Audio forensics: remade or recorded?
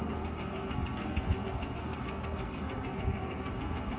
remade